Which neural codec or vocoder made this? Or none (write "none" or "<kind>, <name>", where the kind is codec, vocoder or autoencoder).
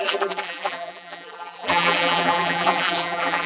vocoder, BigVGAN v2